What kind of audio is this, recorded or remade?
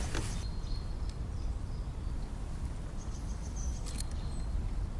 recorded